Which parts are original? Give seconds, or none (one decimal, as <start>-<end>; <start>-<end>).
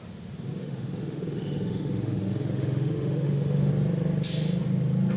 0.0-0.6; 3.7-5.2